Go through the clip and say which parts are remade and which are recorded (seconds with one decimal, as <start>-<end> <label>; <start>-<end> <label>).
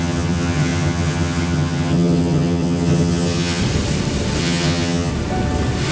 0.0-3.6 remade; 3.6-4.4 recorded; 4.4-5.1 remade; 5.1-5.9 recorded